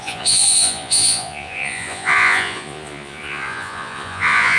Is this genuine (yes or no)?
no